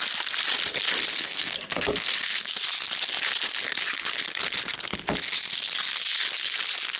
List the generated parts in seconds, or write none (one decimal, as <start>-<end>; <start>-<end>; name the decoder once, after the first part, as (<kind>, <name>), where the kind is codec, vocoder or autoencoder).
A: 1.1-2.4 (codec, SNAC)